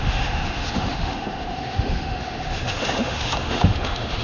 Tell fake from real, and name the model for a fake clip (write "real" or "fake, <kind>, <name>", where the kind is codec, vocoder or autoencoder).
fake, autoencoder, DAC-VAE